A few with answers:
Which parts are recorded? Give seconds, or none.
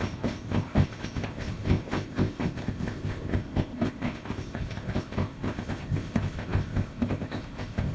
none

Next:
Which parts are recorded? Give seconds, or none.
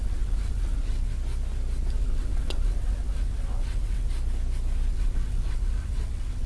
1.1-2.0; 4.1-4.9